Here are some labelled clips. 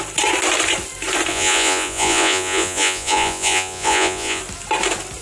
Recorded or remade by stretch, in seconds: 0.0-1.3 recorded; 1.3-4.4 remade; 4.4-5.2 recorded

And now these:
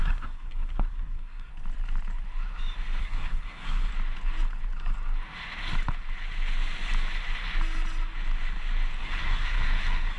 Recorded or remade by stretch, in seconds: 0.0-1.5 remade; 1.5-3.0 recorded; 3.0-3.9 remade; 3.9-9.0 recorded; 9.0-10.2 remade

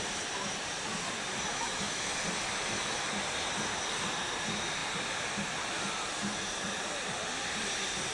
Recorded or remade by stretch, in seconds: 0.0-1.5 recorded; 1.5-2.1 remade; 2.1-8.1 recorded

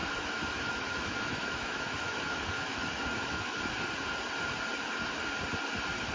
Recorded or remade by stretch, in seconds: 0.0-3.7 remade; 3.7-6.1 recorded

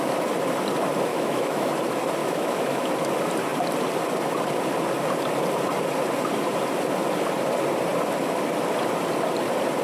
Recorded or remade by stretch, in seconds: 0.0-1.1 recorded; 1.1-1.7 remade; 1.7-2.2 recorded; 2.2-2.9 remade; 2.9-9.8 recorded